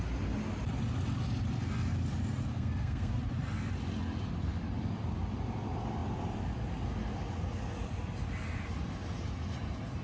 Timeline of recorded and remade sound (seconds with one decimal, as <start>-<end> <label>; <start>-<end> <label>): 0.0-2.5 recorded; 2.5-3.1 remade; 3.1-10.0 recorded